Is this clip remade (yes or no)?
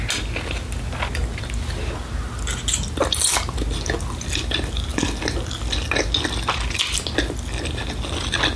no